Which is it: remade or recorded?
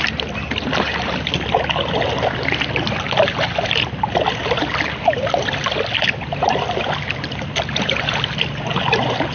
recorded